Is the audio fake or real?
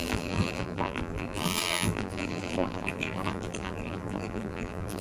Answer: fake